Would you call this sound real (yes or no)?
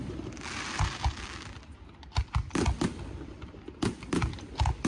yes